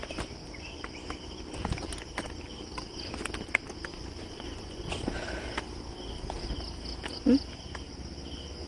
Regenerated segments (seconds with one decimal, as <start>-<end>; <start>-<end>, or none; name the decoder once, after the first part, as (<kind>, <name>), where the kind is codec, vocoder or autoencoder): 3.9-5.0 (vocoder, Vocos)